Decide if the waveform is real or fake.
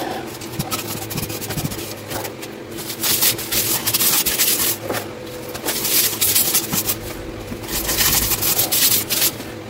real